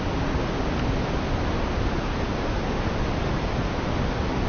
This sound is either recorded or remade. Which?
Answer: recorded